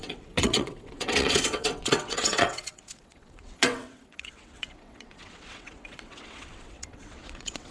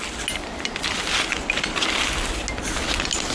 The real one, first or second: second